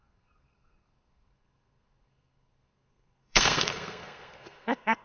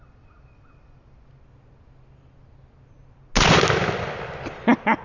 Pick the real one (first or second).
second